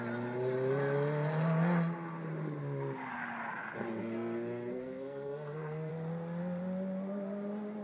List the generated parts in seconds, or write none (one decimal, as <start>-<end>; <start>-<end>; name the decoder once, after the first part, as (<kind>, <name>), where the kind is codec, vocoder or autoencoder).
4.0-5.9 (codec, SNAC)